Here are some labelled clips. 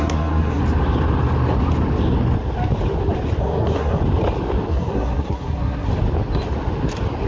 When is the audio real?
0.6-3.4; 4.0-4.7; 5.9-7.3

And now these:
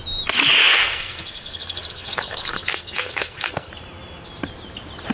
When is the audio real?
0.0-0.6; 3.7-5.1

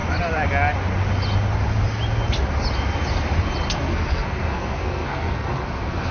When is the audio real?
0.0-3.7

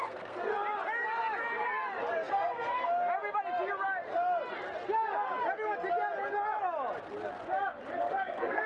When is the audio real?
0.5-2.3; 2.8-8.0

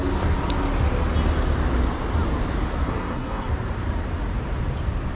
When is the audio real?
0.0-2.8; 3.5-5.1

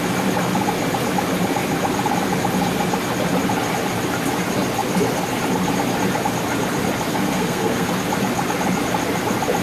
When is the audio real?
0.0-7.1; 7.9-9.6